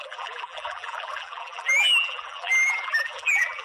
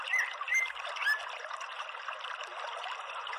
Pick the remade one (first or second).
first